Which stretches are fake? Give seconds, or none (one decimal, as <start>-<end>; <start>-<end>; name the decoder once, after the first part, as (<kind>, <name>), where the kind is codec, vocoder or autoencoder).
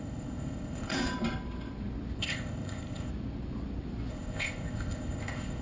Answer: 0.0-0.9 (codec, ZipCodec); 2.2-3.1; 4.1-5.6